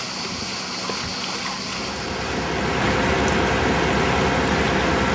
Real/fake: real